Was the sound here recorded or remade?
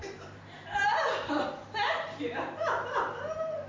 remade